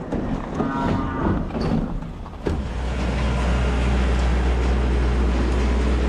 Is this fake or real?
real